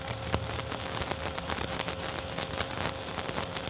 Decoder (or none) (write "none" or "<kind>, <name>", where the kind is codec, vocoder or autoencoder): none